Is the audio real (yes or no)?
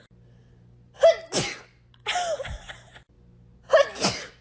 yes